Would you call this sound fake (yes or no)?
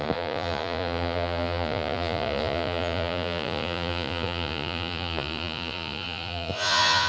yes